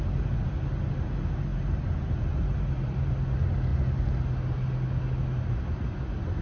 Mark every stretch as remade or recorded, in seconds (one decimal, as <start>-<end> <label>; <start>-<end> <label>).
0.0-1.5 recorded; 1.5-3.1 remade; 3.1-6.4 recorded